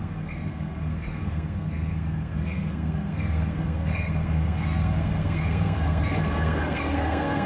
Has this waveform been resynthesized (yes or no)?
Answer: yes